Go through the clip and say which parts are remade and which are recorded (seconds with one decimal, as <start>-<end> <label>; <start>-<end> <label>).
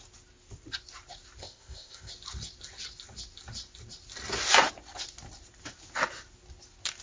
0.0-1.4 recorded; 1.4-2.1 remade; 2.1-7.0 recorded